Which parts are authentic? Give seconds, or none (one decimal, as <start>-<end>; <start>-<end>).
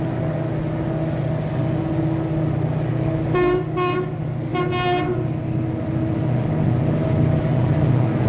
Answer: 0.0-8.3